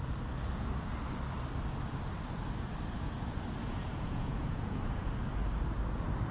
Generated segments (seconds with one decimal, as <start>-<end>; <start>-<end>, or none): 3.6-5.1